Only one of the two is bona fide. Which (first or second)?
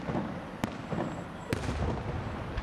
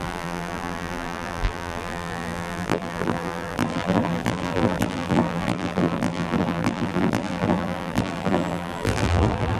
first